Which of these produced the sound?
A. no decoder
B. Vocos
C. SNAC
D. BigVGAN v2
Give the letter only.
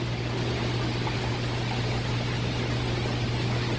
A